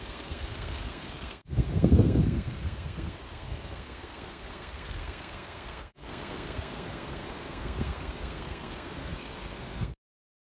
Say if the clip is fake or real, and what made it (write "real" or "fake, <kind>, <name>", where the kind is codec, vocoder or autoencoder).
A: fake, codec, SNAC